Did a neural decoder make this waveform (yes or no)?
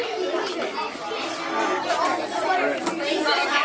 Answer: no